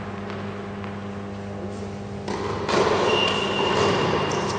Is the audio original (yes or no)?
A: yes